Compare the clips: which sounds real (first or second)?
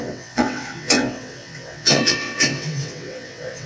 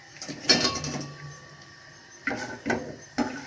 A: second